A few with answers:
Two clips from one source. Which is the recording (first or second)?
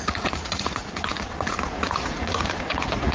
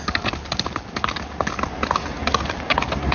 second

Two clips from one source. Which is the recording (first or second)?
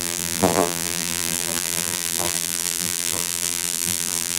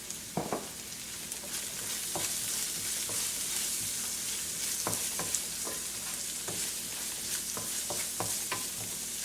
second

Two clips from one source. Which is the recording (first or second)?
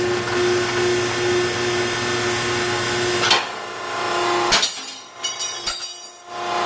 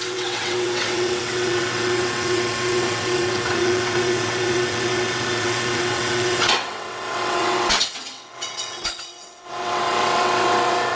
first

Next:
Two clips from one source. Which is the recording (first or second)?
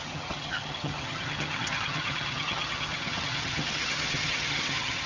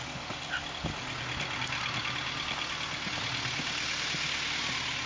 second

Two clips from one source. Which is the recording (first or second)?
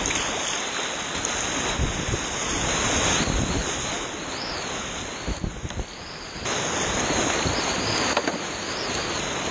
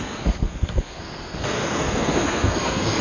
first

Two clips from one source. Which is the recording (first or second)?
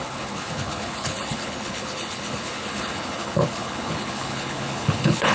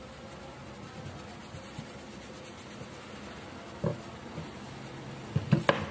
second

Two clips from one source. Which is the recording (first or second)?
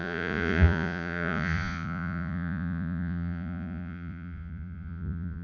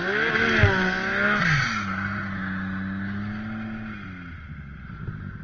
second